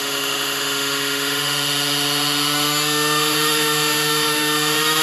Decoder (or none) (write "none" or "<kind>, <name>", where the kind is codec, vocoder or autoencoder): autoencoder, DAC-VAE